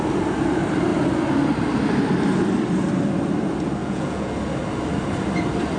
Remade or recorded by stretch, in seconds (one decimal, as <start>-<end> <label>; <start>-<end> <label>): 0.0-3.8 recorded; 3.8-4.3 remade; 4.3-5.8 recorded